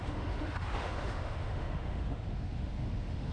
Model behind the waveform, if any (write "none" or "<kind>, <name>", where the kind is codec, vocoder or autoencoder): autoencoder, DAC-VAE